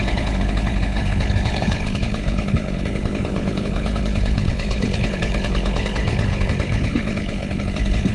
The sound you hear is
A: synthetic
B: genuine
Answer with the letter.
A